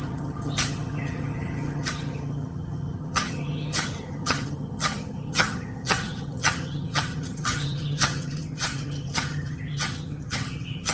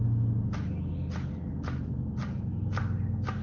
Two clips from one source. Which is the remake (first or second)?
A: first